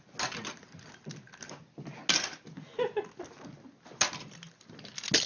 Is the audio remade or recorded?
recorded